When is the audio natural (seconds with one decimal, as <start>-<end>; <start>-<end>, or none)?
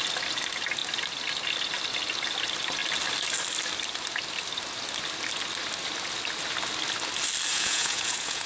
0.0-7.5